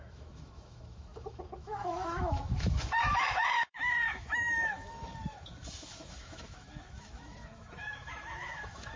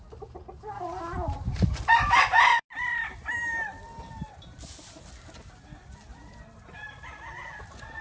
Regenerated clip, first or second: first